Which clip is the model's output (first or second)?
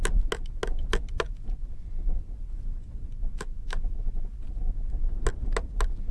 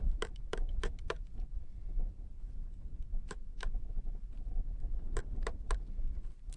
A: second